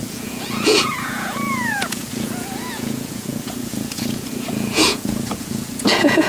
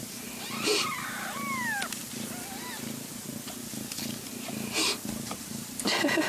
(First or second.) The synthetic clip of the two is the first